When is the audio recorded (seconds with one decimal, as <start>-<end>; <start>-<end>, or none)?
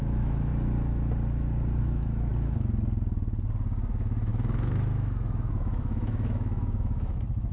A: 0.5-1.8; 2.3-3.9